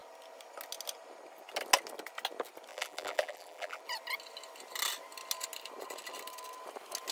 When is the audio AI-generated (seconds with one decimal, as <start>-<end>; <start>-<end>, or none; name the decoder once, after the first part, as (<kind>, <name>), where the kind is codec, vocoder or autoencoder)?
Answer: 2.7-3.8 (vocoder, BigVGAN v2)